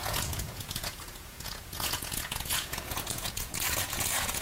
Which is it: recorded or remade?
remade